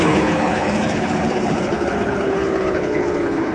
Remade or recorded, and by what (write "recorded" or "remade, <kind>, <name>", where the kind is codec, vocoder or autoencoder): remade, codec, HILCodec